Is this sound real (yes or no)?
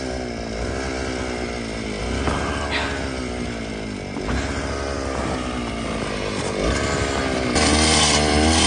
yes